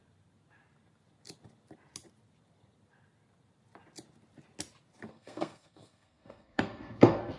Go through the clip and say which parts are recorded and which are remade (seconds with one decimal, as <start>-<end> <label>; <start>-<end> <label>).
0.0-5.1 recorded; 5.1-7.4 remade